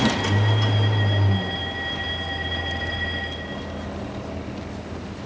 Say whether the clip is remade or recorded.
recorded